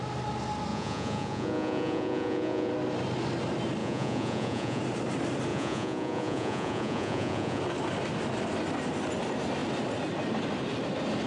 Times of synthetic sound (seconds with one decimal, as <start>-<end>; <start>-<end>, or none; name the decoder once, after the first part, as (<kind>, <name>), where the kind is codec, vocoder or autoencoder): 0.7-2.7 (vocoder, Vocos); 3.8-4.8; 5.5-7.6

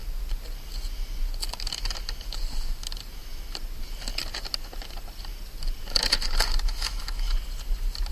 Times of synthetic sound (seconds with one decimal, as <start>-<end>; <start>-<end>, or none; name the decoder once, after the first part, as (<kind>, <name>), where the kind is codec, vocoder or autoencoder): 6.7-7.3 (autoencoder, DAC-VAE)